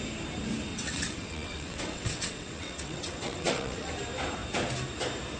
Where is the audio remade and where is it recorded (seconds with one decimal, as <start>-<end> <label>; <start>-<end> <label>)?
0.0-0.7 recorded; 0.7-3.9 remade; 3.9-5.4 recorded